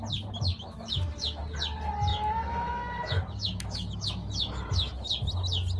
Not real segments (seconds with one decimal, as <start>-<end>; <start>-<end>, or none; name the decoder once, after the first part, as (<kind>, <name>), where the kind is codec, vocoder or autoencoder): 0.5-1.4 (autoencoder, DAC-VAE); 2.1-5.1